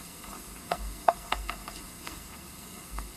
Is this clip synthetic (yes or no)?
yes